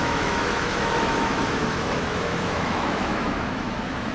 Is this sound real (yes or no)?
no